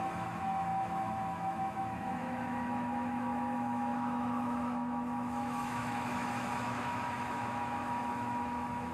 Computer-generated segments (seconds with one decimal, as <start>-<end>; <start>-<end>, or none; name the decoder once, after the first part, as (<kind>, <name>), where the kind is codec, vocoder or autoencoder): 0.0-8.9 (autoencoder, DAC-VAE)